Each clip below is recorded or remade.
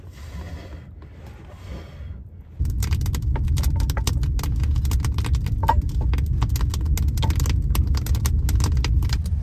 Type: recorded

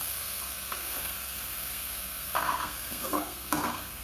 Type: remade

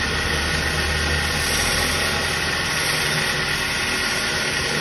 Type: recorded